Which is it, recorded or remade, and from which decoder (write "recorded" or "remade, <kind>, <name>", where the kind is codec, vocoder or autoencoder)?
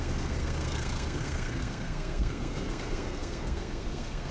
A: remade, codec, SNAC